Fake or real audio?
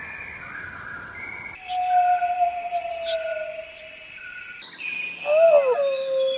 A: real